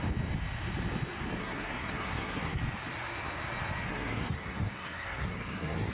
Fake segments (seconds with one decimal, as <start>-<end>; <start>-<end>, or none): 1.3-2.6; 3.9-5.9